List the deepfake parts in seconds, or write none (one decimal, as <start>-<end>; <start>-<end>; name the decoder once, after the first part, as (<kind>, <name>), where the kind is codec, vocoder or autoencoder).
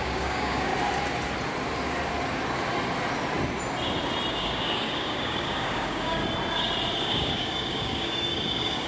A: 0.0-0.7 (codec, DAC); 4.3-6.2; 7.0-8.9